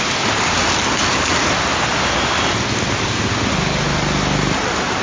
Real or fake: real